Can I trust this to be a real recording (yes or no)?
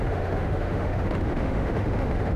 no